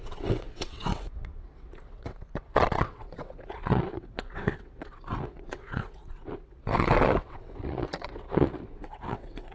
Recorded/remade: remade